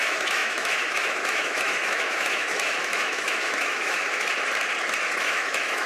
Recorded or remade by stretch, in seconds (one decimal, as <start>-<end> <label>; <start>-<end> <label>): 0.0-4.3 remade; 4.3-5.2 recorded; 5.2-5.9 remade